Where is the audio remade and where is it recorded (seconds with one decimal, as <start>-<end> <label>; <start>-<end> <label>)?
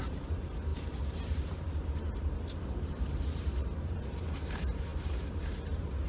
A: 0.0-6.1 remade